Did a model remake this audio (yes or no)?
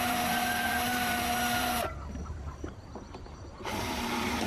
yes